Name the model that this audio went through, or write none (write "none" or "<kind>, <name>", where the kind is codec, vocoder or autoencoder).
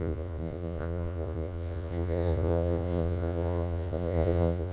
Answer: vocoder, Vocos